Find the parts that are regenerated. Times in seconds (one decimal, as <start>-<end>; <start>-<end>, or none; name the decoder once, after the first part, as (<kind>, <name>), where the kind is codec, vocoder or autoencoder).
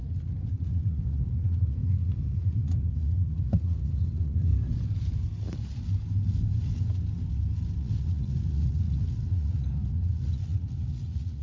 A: 0.0-4.5 (vocoder, Vocos); 7.8-11.4